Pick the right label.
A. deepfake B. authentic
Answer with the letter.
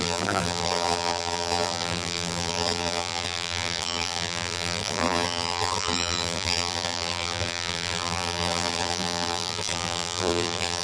A